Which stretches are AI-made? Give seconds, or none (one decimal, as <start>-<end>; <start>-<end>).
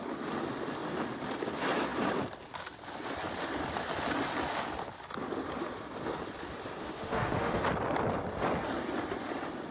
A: 6.8-7.6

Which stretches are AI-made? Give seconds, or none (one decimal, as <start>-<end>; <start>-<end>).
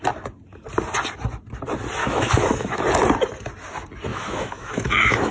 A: 2.0-2.8; 4.1-5.3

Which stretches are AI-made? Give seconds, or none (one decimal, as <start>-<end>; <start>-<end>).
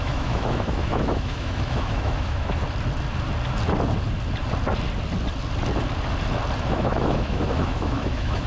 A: 0.0-2.6; 6.7-8.5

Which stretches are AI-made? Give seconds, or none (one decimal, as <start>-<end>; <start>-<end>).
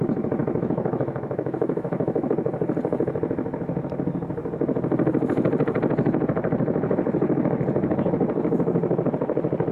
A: 0.4-2.3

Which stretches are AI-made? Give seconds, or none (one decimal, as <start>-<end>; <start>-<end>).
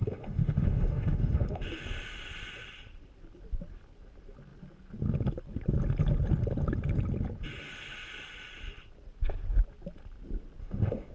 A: 0.0-1.8; 10.6-11.1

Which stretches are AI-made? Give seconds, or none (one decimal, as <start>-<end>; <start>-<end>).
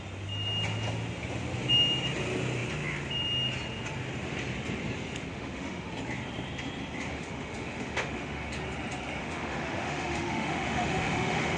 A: 5.3-5.9; 7.1-8.5; 9.2-11.6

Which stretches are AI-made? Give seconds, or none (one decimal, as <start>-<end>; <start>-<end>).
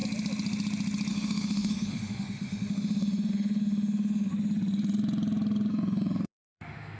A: 1.1-4.3; 5.7-7.0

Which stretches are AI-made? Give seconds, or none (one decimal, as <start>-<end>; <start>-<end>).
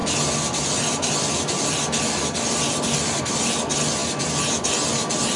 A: none